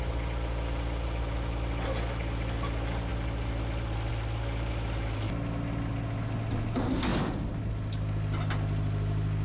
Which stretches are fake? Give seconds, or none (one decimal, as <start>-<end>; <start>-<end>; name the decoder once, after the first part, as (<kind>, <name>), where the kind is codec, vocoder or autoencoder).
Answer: none